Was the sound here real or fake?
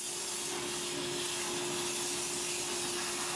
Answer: real